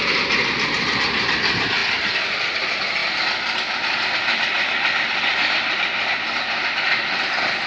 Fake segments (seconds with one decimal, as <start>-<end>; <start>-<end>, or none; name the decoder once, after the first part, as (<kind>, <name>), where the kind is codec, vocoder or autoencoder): none